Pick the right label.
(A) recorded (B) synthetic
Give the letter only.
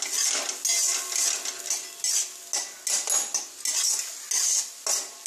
A